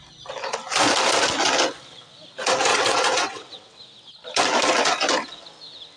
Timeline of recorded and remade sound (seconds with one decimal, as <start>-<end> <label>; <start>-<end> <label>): 0.0-2.7 recorded; 2.7-3.8 remade; 3.8-6.0 recorded